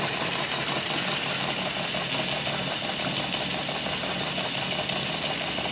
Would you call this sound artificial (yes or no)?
no